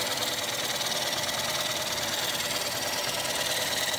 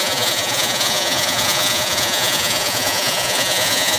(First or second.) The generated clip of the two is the second